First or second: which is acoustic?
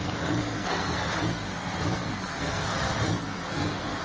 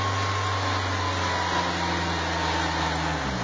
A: second